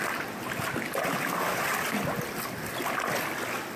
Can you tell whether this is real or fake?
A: real